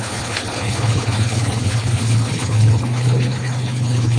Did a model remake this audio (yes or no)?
yes